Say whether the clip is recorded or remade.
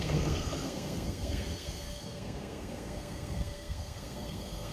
remade